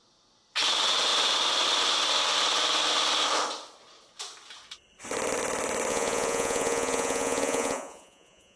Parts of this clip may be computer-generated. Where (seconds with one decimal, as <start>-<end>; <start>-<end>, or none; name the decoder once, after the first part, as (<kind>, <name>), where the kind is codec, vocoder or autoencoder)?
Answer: 5.9-8.6 (vocoder, Vocos)